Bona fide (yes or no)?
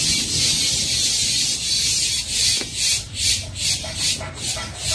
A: yes